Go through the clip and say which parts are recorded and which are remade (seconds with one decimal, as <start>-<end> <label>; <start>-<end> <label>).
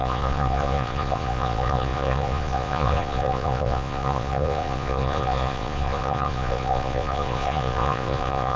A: 0.0-8.6 remade